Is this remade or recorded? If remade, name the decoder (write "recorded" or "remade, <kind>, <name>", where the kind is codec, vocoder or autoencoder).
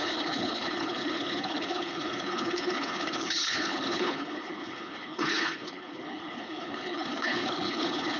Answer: remade, codec, HILCodec